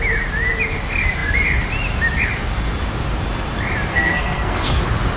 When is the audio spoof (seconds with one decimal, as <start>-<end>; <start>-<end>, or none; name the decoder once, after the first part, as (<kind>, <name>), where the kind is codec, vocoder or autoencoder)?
3.9-4.8 (codec, SNAC)